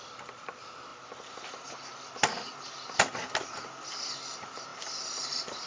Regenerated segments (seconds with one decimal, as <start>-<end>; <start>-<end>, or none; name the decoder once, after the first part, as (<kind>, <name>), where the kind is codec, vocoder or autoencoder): none

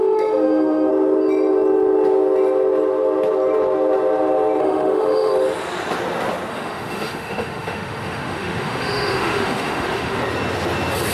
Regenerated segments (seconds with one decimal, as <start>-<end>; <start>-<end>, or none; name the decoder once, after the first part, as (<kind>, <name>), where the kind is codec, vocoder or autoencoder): 0.0-0.9 (autoencoder, DAC-VAE); 4.6-5.3; 6.5-10.2

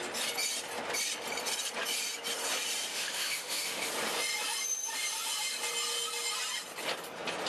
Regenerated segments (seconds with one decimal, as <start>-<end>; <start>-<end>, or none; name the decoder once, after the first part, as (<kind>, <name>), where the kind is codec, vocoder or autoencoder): 2.9-3.9 (autoencoder, DAC-VAE)

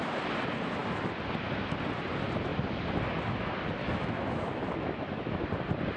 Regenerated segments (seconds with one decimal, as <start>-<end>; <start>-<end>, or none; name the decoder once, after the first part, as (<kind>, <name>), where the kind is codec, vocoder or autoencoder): 3.8-5.4 (autoencoder, DAC-VAE)

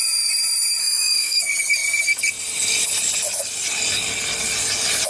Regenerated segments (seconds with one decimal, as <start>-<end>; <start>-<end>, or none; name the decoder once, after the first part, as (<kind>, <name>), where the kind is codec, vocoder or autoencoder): 0.8-1.4 (autoencoder, DAC-VAE)

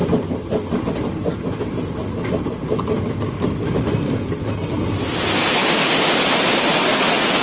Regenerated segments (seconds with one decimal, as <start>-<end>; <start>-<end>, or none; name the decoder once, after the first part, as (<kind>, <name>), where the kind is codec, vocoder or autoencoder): none

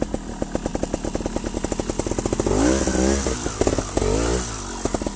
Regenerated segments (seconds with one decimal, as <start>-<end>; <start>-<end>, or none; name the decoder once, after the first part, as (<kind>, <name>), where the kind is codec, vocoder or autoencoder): none